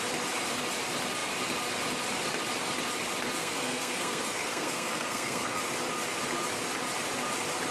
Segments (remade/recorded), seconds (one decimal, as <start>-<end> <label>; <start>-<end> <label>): 0.0-3.4 recorded; 3.4-5.6 remade; 5.6-7.7 recorded